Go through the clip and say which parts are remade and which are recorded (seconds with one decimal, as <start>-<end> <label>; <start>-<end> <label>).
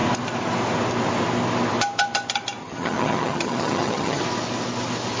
0.0-2.6 recorded; 2.6-4.2 remade; 4.2-5.2 recorded